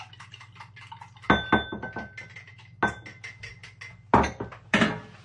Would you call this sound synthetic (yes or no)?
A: no